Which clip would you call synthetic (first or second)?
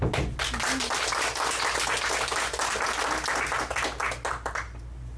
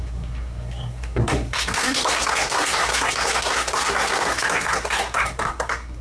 second